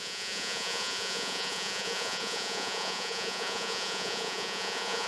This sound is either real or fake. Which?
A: fake